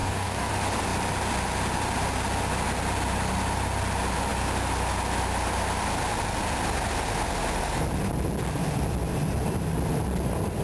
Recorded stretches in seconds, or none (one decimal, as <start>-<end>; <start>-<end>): 0.5-10.6